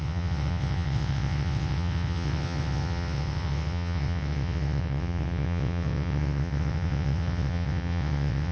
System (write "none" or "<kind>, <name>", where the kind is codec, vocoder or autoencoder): vocoder, WaveNeXt